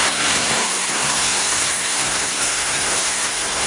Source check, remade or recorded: remade